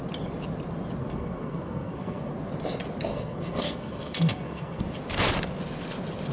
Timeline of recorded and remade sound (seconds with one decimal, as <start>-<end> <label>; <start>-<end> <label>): 0.0-1.0 recorded; 1.0-2.3 remade; 2.3-3.1 recorded; 3.1-4.8 remade; 4.8-6.3 recorded